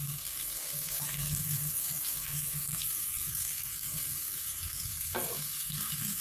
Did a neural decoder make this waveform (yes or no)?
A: yes